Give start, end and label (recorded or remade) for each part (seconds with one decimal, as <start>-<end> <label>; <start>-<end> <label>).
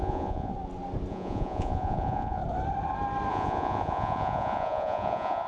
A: 0.0-0.5 remade; 0.5-1.1 recorded; 1.1-2.4 remade; 2.4-3.3 recorded; 3.3-5.5 remade